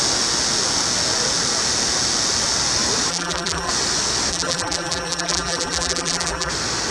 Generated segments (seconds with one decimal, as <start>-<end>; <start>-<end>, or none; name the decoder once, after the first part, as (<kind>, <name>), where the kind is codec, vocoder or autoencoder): 3.1-3.7 (vocoder, BigVGAN v2); 4.3-6.5